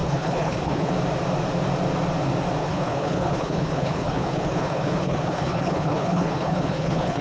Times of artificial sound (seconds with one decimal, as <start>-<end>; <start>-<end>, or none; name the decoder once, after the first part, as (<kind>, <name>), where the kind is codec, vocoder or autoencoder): 0.0-0.9 (codec, HILCodec); 2.6-7.2